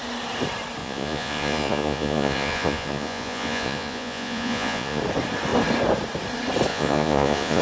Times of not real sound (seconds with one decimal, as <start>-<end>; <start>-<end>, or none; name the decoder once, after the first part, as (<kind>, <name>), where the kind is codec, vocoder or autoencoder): 0.8-5.0 (vocoder, Vocos); 6.7-7.6